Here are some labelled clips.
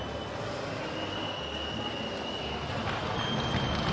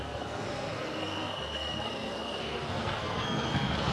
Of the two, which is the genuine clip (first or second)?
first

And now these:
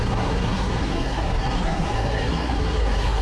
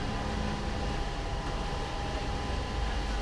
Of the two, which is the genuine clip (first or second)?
second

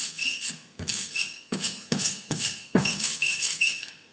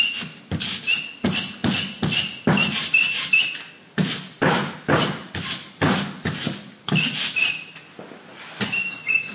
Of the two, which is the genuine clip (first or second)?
second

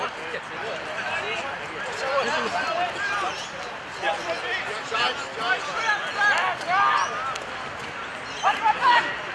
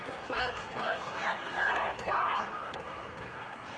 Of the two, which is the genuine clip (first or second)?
first